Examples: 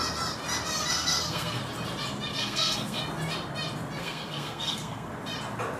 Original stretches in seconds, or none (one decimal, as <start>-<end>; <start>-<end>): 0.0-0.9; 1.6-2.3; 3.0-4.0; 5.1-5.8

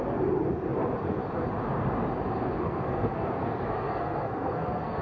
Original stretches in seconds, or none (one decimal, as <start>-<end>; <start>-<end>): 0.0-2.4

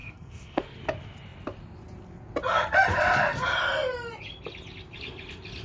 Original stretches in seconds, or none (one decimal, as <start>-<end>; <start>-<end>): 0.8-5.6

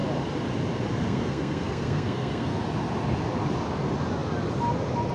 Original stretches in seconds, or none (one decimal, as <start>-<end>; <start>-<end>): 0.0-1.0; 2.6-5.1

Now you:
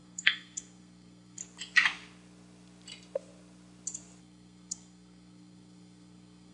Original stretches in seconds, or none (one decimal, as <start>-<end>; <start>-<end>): 1.4-4.2

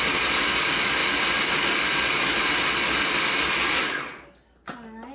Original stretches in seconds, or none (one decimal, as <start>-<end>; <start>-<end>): 0.0-5.1

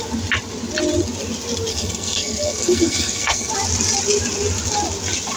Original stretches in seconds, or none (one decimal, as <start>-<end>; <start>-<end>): 0.0-1.7; 3.5-5.4